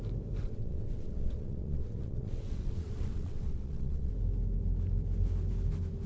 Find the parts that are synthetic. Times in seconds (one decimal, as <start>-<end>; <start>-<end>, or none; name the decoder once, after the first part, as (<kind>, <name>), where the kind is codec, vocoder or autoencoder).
0.4-4.1 (vocoder, WaveNeXt)